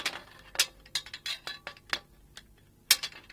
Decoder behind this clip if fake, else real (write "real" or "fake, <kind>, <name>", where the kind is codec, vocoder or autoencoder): real